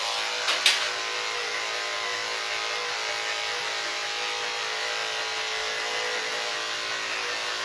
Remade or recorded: recorded